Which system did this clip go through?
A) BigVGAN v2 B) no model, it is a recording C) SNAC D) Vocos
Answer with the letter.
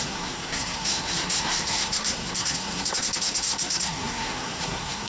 C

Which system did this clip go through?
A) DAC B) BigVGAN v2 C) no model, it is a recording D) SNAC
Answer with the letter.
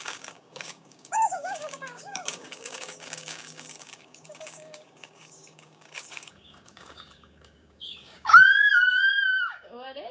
A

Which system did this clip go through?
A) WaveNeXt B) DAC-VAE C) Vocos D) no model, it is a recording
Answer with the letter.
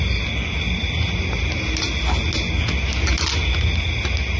D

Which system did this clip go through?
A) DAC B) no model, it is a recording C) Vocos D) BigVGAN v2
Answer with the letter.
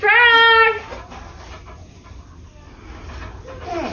B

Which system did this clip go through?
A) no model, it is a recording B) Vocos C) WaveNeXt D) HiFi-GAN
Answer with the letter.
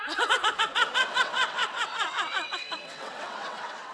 C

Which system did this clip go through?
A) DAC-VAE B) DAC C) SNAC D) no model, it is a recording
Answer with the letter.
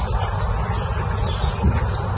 D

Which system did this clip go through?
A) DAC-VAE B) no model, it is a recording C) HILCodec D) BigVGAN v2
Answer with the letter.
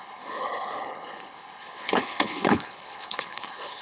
C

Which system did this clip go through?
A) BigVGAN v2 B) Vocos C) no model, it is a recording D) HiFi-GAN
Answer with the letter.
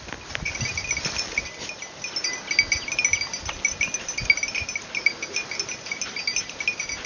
C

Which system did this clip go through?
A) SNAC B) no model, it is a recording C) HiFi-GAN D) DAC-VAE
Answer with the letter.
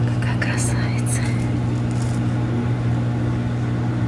B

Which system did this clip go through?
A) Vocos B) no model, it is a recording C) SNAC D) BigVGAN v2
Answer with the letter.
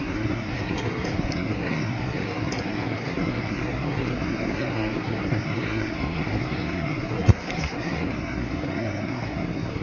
C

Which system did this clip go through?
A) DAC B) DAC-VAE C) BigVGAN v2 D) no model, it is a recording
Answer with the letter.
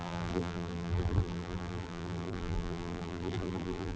C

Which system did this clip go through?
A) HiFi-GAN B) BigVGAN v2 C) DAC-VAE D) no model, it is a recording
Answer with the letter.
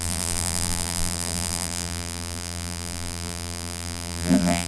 B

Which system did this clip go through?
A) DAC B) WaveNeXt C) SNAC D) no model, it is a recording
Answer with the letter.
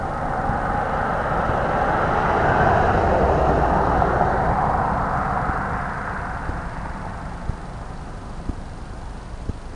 D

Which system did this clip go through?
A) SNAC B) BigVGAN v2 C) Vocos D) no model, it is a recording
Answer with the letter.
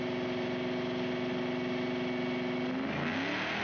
D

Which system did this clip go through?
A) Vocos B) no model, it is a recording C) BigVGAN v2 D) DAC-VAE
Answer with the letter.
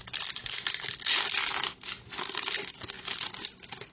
B